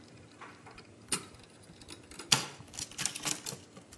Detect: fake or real fake